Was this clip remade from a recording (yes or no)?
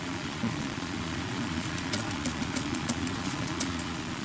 yes